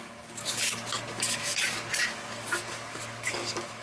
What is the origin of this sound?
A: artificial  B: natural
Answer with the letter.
A